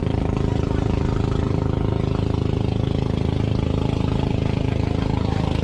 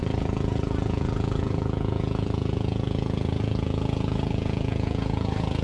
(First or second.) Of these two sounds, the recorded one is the first